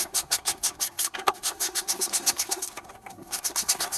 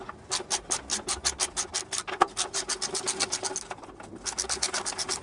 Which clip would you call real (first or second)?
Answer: second